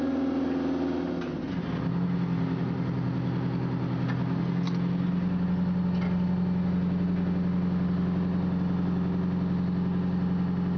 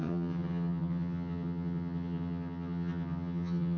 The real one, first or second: first